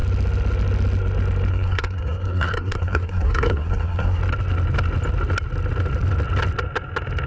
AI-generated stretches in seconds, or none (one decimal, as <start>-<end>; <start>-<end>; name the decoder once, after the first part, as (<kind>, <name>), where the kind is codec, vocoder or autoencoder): 1.5-4.2 (codec, SNAC)